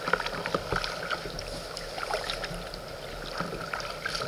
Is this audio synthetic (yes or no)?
no